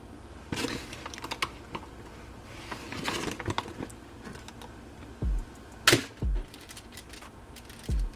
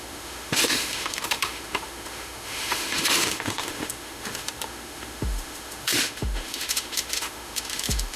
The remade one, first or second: second